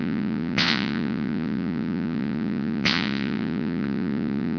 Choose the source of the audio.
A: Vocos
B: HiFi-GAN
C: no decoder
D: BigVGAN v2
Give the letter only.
A